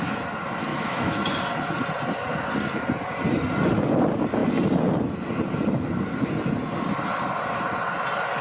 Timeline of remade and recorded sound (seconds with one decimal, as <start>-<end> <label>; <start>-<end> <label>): 0.0-0.7 recorded; 0.7-1.2 remade; 1.2-8.4 recorded